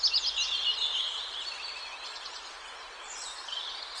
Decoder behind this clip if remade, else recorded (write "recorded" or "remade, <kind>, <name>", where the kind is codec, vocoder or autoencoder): recorded